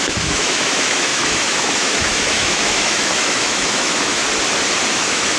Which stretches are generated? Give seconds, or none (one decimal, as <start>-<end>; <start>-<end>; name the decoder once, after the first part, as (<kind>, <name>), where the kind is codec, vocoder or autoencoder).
0.0-4.2 (autoencoder, DAC-VAE); 4.9-5.4